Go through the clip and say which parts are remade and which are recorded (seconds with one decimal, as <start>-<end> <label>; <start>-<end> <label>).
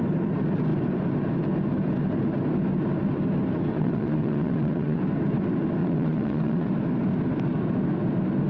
0.0-3.7 recorded; 3.7-5.0 remade; 5.0-5.8 recorded; 5.8-6.7 remade; 6.7-8.5 recorded